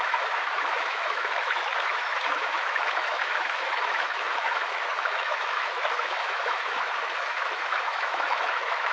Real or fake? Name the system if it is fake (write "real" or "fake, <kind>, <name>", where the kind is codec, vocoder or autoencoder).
fake, autoencoder, DAC-VAE